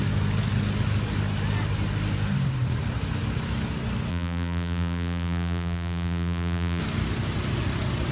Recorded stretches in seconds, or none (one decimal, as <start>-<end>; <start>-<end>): 0.0-4.1; 6.8-8.1